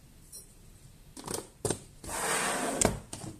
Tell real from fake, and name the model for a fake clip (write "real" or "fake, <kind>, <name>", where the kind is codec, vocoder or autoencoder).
real